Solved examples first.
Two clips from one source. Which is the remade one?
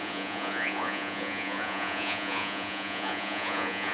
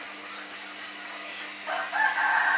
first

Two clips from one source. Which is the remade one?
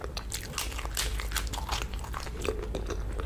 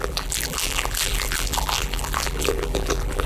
second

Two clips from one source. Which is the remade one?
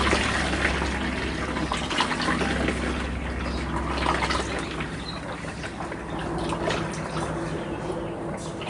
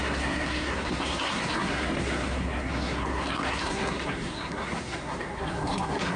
second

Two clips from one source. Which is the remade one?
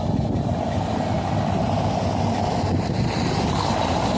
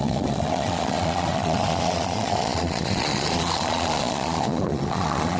second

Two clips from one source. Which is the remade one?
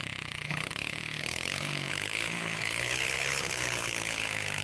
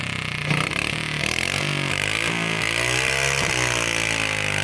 first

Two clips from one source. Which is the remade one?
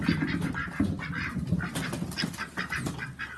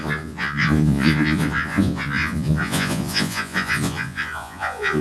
second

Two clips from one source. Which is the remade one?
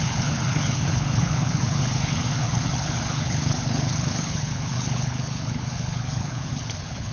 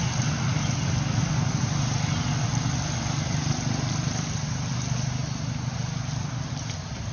first